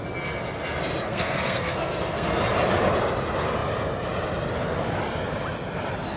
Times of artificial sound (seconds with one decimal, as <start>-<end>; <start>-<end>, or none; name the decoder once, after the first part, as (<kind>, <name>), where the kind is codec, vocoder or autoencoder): 1.1-2.3 (codec, SNAC)